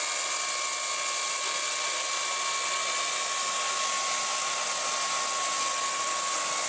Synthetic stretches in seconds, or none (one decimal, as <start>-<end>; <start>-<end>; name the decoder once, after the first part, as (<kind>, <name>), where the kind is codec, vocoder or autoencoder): none